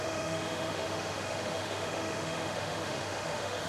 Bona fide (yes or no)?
no